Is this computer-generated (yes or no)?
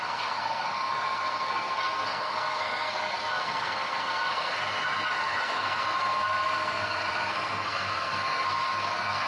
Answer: yes